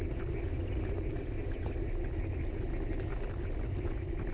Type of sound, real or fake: real